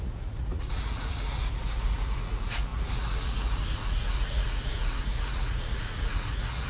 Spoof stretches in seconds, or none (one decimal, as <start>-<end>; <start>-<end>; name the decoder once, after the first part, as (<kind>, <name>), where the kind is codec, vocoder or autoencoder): 0.0-6.7 (vocoder, Vocos)